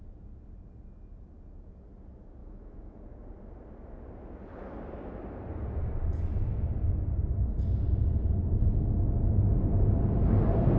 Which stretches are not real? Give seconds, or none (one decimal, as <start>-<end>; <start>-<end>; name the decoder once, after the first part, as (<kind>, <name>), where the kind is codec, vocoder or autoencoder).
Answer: 2.4-3.0 (autoencoder, DAC-VAE)